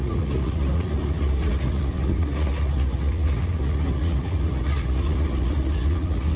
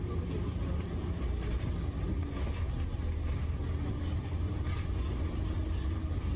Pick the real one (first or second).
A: second